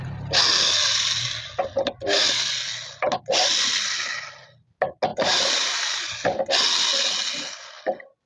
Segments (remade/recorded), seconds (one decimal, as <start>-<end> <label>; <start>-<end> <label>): 0.0-5.1 recorded; 5.1-6.0 remade; 6.0-8.3 recorded